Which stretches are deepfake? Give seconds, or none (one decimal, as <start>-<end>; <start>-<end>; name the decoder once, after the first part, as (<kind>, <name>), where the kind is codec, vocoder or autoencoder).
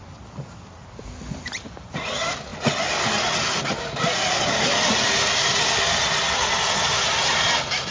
none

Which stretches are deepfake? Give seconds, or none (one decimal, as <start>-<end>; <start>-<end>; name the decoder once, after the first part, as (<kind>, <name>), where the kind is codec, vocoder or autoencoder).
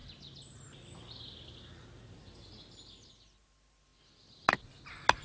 none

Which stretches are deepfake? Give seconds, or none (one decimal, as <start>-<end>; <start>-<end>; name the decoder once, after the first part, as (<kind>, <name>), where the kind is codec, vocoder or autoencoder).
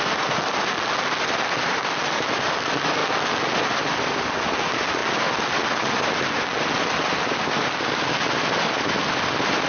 none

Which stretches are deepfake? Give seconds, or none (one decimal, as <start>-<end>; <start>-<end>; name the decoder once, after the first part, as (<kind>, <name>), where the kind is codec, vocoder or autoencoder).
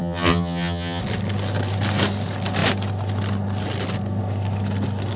0.0-1.0 (vocoder, HiFi-GAN)